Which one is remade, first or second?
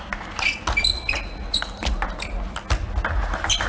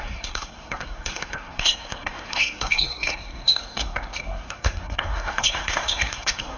second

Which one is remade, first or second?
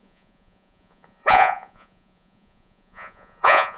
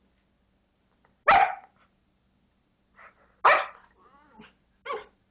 first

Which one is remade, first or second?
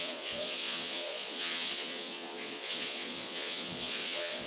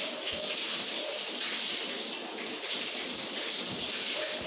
first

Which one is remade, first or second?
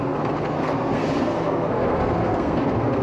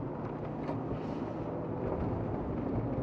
first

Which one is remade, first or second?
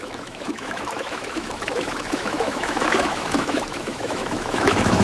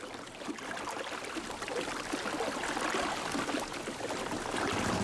first